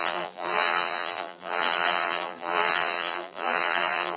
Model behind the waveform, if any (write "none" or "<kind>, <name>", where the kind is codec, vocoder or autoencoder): vocoder, BigVGAN v2